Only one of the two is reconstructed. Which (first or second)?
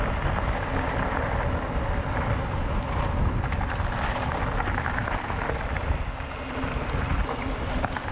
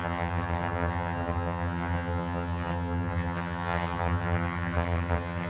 second